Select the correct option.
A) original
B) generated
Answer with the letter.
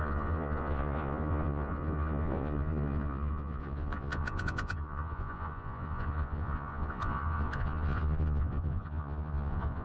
B